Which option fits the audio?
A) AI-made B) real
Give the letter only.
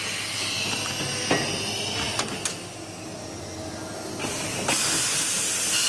B